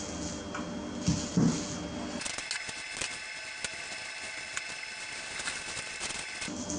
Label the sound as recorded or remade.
recorded